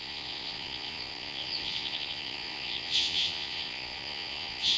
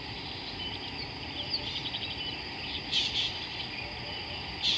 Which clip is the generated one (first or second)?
first